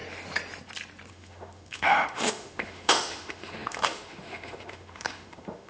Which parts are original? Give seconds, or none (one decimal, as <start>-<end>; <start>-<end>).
0.0-1.1